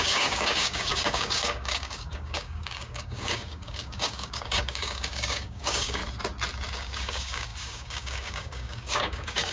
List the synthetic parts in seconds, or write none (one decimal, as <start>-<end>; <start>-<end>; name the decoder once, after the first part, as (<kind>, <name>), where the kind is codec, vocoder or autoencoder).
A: 0.0-6.0 (codec, DAC); 6.7-9.5